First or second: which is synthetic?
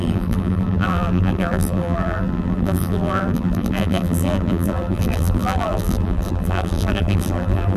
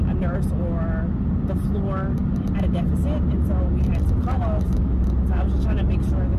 first